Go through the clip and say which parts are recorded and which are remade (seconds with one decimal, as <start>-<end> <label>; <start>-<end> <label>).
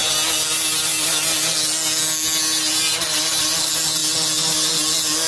0.0-5.3 recorded